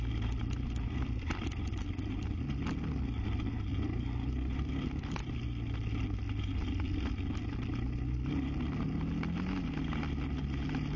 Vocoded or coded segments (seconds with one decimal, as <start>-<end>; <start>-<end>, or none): none